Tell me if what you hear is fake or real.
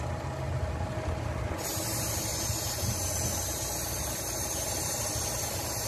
real